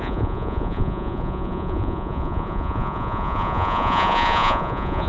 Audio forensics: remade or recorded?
remade